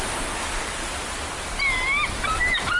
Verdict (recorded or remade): recorded